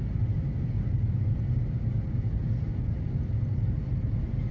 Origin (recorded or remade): recorded